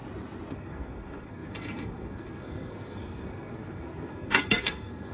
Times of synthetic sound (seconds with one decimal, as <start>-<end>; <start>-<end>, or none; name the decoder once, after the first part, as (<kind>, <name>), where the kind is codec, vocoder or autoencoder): 0.5-5.1 (codec, SNAC)